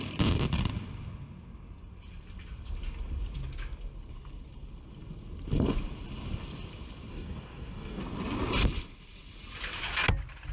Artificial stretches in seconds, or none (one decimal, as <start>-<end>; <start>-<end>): 7.1-8.0